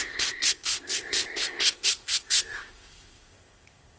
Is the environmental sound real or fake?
fake